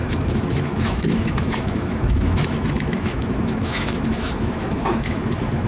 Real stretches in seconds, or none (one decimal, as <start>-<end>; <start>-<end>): none